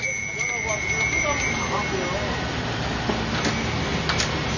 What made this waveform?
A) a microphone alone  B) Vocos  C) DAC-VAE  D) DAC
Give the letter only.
A